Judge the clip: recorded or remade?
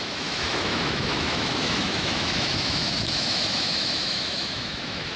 remade